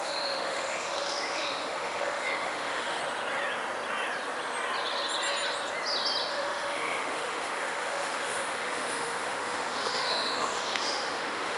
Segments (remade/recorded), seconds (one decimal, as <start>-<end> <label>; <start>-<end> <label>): 0.0-3.0 remade; 3.0-6.3 recorded; 6.3-11.6 remade